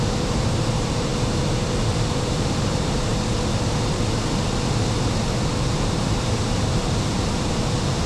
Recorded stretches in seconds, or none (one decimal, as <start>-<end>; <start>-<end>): 1.1-2.2; 3.1-5.5